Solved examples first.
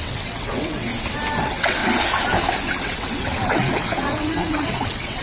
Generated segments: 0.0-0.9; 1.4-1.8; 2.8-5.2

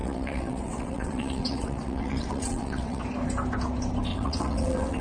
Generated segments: 0.0-3.0; 4.1-5.0